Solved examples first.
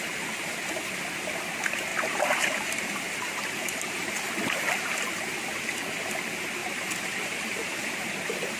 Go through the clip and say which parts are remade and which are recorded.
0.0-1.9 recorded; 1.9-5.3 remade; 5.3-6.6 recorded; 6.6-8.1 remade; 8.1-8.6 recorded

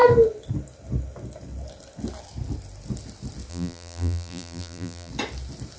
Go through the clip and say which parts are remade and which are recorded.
0.0-3.5 recorded; 3.5-5.1 remade; 5.1-5.8 recorded

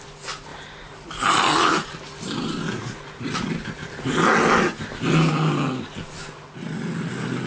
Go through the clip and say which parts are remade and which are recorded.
0.0-0.5 recorded; 0.5-1.4 remade; 1.4-2.8 recorded; 2.8-3.4 remade; 3.4-7.5 recorded